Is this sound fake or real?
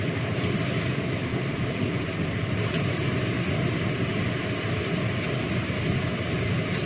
fake